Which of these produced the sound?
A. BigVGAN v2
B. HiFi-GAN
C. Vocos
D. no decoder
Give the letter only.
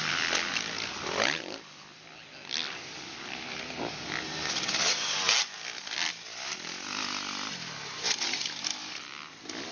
D